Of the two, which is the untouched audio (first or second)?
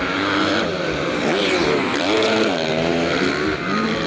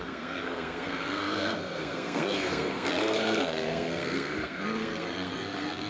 first